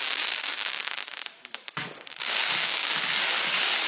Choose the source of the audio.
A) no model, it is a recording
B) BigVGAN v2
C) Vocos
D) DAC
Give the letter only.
D